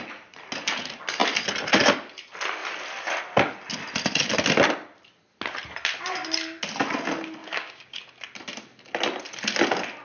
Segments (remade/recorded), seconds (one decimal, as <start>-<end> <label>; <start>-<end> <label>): 0.0-7.4 recorded; 7.4-8.0 remade; 8.0-10.0 recorded